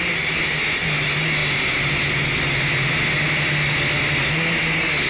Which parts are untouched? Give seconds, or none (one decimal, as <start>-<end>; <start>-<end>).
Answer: 0.0-5.1